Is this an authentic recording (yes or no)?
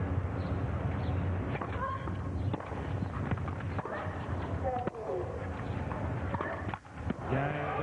yes